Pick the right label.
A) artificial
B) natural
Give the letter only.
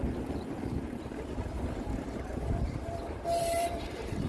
A